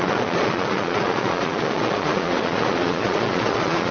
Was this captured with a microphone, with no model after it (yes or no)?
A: no